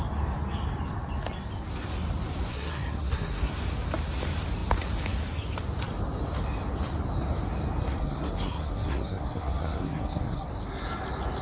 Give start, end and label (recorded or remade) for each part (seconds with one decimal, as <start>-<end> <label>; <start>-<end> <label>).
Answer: 0.0-2.5 recorded; 2.5-3.5 remade; 3.5-8.0 recorded; 8.0-10.5 remade; 10.5-11.4 recorded